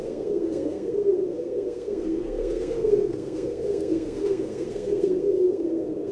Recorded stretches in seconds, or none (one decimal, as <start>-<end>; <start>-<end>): none